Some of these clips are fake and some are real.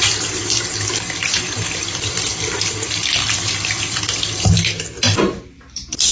fake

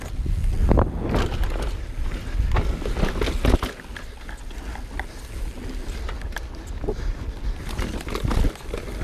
real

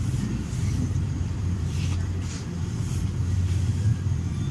fake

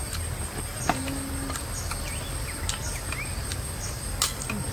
real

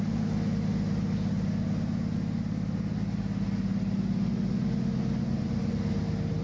real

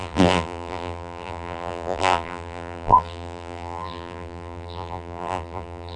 fake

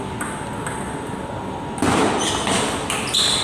fake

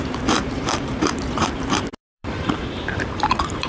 fake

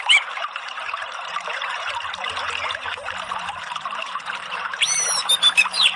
fake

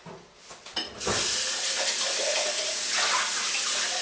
real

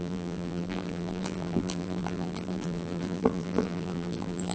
fake